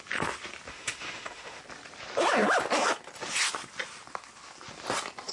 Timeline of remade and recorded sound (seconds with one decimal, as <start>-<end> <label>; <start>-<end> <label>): 0.0-0.7 recorded; 0.7-1.6 remade; 1.6-5.3 recorded